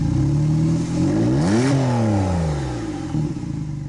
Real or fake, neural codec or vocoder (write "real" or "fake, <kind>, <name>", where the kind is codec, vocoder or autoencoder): real